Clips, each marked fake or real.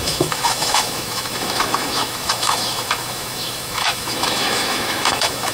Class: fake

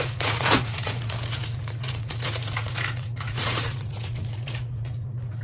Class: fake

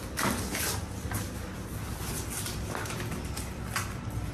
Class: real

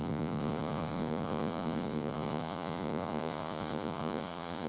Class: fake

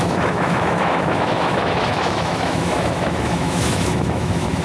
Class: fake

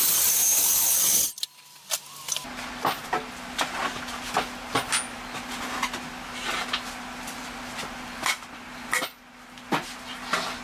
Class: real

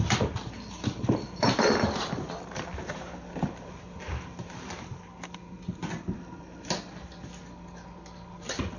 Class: real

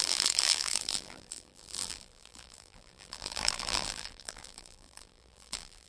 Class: fake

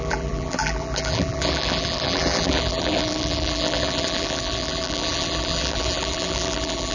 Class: fake